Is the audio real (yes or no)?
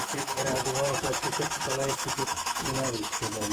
no